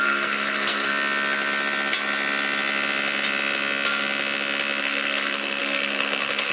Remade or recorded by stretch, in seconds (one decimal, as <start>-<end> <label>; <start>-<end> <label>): 0.0-0.9 remade; 0.9-4.8 recorded; 4.8-6.5 remade